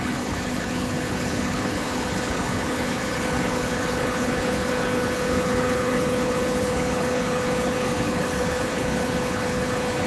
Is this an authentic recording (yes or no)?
no